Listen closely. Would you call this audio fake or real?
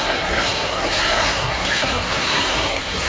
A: fake